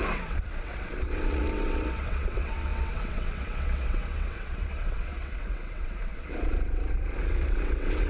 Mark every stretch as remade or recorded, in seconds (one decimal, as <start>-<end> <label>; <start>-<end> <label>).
0.0-8.1 remade